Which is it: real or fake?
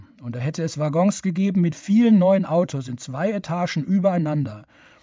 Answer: fake